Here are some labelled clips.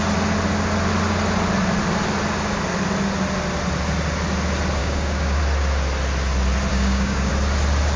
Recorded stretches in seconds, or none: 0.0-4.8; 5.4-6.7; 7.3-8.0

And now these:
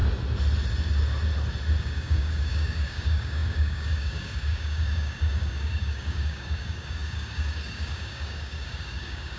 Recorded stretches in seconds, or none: 0.0-1.8

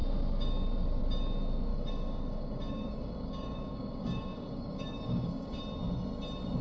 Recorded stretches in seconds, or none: 0.0-1.7; 5.6-6.6

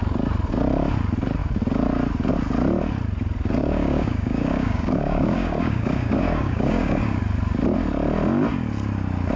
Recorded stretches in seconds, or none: 0.0-3.6; 7.2-9.4